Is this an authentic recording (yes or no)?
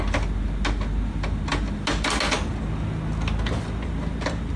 yes